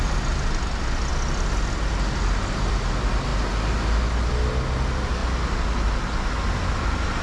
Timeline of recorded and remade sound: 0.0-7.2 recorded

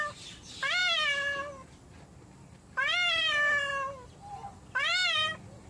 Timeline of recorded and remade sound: 0.0-5.7 recorded

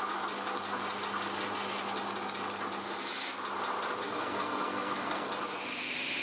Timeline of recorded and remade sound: 0.0-4.0 recorded; 4.0-5.3 remade; 5.3-6.2 recorded

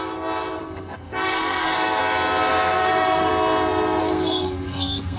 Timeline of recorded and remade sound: 0.0-0.6 recorded; 0.6-2.0 remade; 2.0-2.5 recorded; 2.5-3.3 remade; 3.3-4.0 recorded; 4.0-5.2 remade